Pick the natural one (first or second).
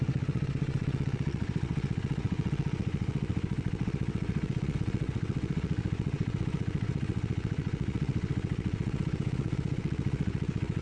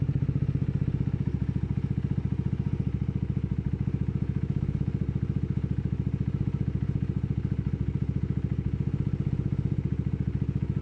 second